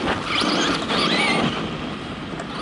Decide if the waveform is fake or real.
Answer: real